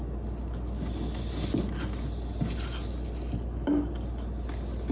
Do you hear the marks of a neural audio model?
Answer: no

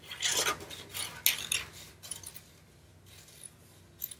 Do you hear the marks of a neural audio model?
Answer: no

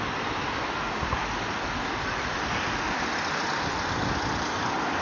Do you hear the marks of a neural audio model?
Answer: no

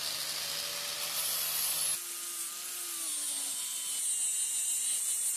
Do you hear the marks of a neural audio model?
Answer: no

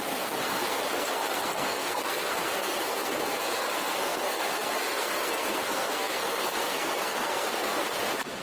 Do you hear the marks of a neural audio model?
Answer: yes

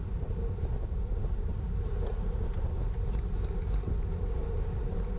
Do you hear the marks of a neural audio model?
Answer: no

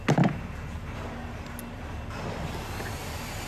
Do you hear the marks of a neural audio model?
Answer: no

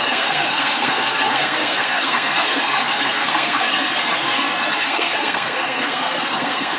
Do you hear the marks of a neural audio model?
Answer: yes